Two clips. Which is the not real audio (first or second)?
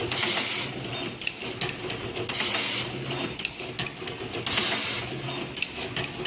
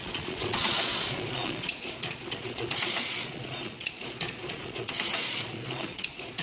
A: second